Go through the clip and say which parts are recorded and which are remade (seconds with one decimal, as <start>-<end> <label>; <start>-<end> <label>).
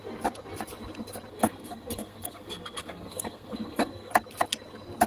0.0-1.3 recorded; 1.3-4.1 remade; 4.1-5.1 recorded